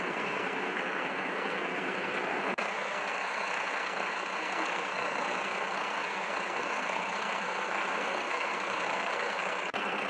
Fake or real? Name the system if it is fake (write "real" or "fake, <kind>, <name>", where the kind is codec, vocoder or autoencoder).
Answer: fake, codec, SNAC